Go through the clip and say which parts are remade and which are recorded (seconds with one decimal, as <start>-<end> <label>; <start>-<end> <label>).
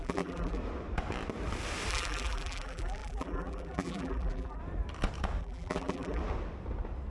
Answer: 0.0-0.6 remade; 0.6-1.9 recorded; 1.9-4.6 remade; 4.6-5.4 recorded; 5.4-6.2 remade; 6.2-7.1 recorded